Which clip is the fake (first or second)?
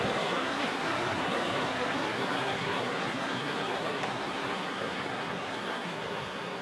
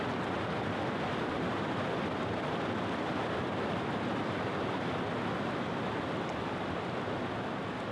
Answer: first